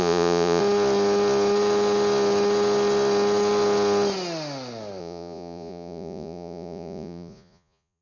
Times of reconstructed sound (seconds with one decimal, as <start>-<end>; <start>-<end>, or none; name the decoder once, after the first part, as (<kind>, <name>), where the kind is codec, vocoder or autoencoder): 0.0-0.6 (vocoder, Vocos); 5.0-8.0